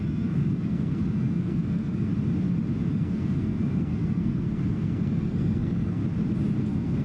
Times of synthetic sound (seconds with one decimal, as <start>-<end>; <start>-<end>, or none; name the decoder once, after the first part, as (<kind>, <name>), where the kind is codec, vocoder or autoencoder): 0.0-2.1 (codec, SNAC); 2.9-6.0; 6.6-7.0